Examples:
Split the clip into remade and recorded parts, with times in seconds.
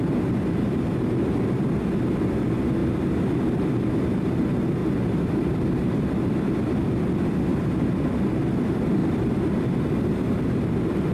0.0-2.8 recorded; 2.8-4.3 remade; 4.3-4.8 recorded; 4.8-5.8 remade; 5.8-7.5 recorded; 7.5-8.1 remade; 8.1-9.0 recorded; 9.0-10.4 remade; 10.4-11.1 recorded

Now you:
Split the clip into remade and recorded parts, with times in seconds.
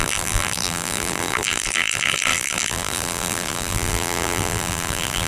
0.0-5.3 remade